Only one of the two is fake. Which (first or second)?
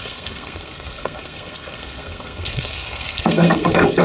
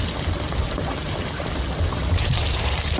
first